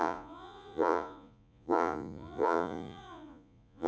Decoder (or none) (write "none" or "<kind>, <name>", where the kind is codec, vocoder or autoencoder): vocoder, Vocos